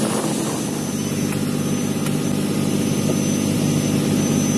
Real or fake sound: real